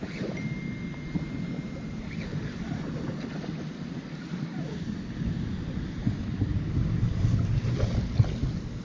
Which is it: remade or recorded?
recorded